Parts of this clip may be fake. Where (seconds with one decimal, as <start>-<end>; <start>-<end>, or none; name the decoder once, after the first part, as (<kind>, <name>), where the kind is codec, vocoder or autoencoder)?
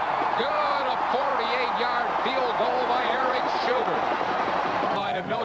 0.0-1.3 (vocoder, Vocos); 3.0-5.4